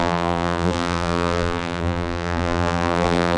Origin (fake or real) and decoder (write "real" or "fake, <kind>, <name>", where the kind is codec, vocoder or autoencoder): fake, vocoder, BigVGAN v2